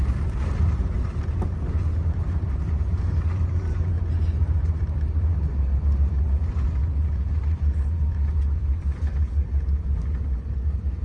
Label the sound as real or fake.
fake